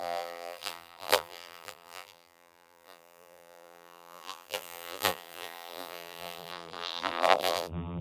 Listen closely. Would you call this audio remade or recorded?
remade